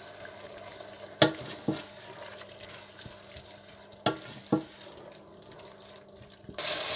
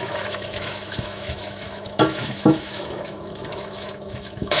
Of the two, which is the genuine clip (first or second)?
first